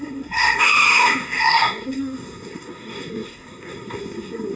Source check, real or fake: fake